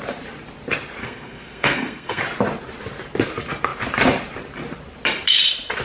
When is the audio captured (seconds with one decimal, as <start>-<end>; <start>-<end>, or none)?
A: 0.0-1.0; 2.2-5.8